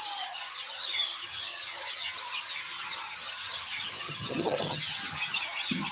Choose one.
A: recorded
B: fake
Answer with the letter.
B